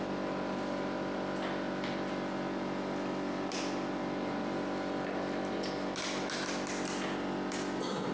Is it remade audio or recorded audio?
recorded